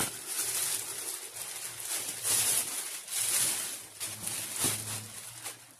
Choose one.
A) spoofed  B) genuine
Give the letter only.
B